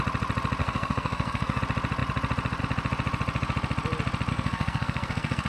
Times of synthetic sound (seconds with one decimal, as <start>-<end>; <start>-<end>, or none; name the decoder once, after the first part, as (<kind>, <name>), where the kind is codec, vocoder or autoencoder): 0.6-1.6 (codec, SNAC); 4.3-5.5